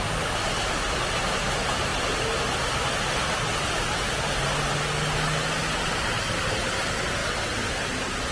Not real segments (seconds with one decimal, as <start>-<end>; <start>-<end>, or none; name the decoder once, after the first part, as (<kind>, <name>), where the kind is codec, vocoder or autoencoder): none